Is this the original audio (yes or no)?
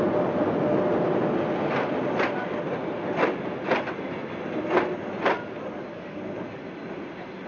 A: yes